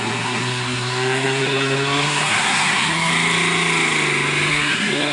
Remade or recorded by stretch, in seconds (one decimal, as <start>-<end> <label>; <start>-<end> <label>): 0.0-3.1 remade; 3.1-4.5 recorded; 4.5-5.1 remade